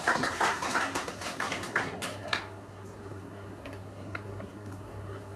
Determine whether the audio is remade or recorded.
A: remade